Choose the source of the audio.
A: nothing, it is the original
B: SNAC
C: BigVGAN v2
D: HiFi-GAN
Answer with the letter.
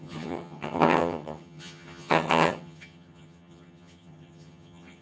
D